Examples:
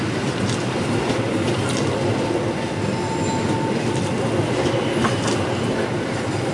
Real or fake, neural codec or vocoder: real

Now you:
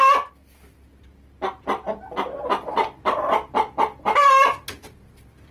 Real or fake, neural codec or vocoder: real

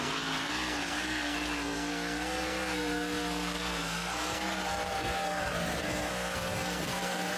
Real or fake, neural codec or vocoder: fake, codec, SNAC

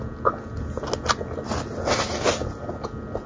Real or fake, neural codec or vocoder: real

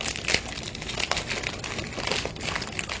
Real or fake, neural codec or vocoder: real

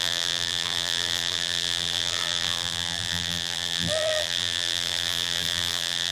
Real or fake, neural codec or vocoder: fake, vocoder, BigVGAN v2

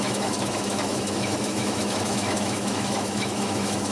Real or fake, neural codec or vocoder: fake, autoencoder, DAC-VAE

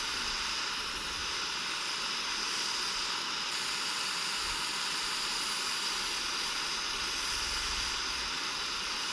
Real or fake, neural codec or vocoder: real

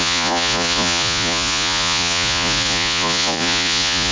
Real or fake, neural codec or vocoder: fake, vocoder, Vocos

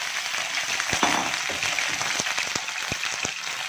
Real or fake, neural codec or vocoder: real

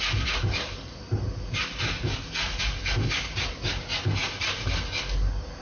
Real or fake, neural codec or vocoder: real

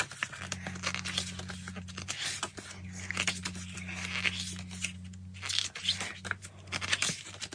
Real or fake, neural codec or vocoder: real